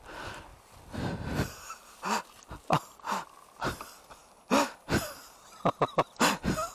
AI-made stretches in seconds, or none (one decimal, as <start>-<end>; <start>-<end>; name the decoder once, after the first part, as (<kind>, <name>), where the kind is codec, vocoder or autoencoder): none